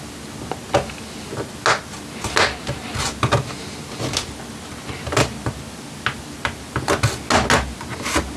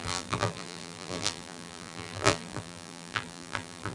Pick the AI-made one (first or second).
second